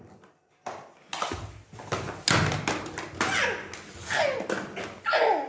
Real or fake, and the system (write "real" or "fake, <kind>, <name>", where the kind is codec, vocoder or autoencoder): real